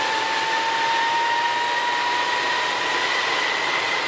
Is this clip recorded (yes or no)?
yes